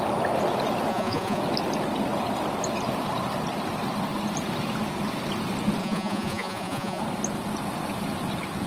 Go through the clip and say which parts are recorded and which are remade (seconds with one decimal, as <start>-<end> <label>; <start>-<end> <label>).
0.0-0.9 recorded; 0.9-1.4 remade; 1.4-5.8 recorded; 5.8-7.0 remade; 7.0-8.7 recorded